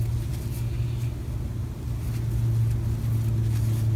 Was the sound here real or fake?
real